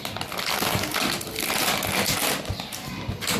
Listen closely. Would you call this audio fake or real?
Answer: real